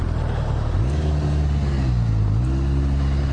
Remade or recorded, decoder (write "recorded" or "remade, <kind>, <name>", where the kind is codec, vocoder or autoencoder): recorded